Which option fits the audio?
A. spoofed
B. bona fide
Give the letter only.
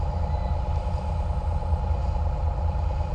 B